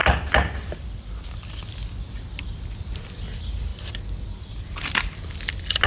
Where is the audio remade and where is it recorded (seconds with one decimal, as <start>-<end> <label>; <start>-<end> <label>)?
0.0-5.9 recorded